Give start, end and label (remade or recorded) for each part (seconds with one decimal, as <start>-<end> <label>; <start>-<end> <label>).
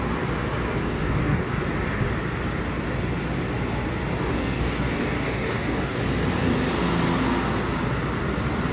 0.0-0.8 recorded; 0.8-1.6 remade; 1.6-4.2 recorded; 4.2-6.0 remade; 6.0-8.7 recorded